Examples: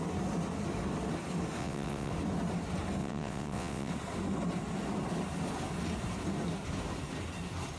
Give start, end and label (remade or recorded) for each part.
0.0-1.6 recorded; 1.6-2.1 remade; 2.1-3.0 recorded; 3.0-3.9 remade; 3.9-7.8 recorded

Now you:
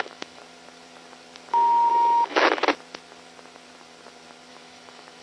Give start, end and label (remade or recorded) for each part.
0.0-0.4 remade; 0.4-1.9 recorded; 1.9-2.6 remade; 2.6-4.5 recorded; 4.5-5.2 remade

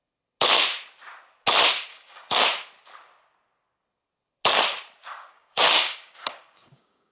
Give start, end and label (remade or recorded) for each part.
0.0-1.9 recorded; 1.9-2.4 remade; 2.4-5.0 recorded; 5.0-7.1 remade

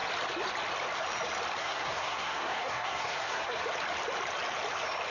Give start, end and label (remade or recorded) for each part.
0.0-1.6 recorded; 1.6-3.6 remade; 3.6-5.1 recorded